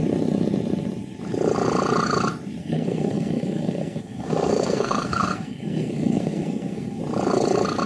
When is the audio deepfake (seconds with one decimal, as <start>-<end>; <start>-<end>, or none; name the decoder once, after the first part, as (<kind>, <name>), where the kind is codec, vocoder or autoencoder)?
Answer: 2.6-7.0 (codec, SNAC)